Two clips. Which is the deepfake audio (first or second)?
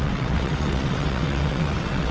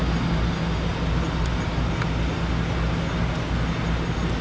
first